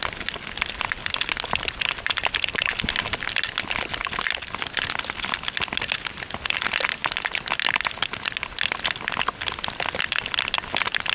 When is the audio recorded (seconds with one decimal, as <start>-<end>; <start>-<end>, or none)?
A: 0.0-11.1